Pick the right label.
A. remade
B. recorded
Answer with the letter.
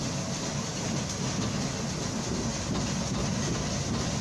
B